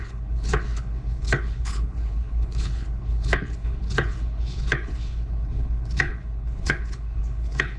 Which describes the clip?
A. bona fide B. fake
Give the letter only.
B